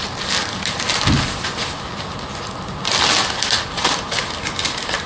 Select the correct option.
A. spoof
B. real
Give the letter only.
B